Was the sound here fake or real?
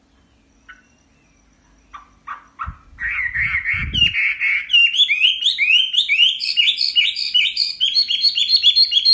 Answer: real